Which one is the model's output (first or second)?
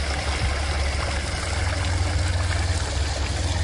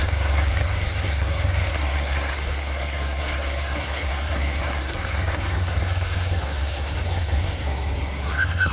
second